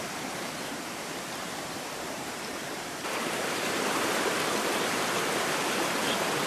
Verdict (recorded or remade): remade